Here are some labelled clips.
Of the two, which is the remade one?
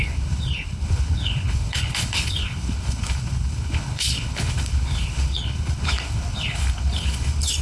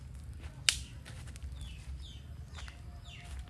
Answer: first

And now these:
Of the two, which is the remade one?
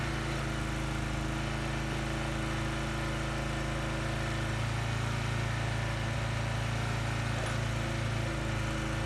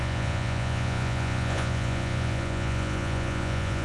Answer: second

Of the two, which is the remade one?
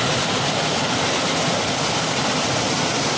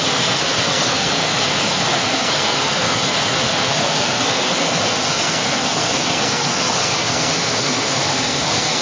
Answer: second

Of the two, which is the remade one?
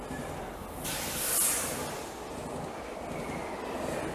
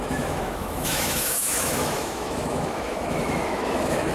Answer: second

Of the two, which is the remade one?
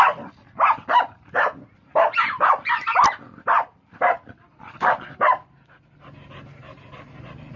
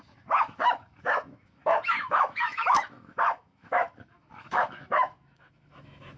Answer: second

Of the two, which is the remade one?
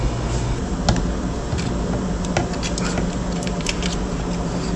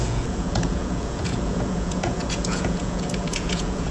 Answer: second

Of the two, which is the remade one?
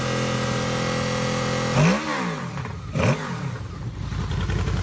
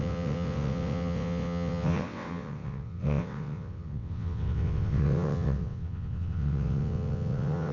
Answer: second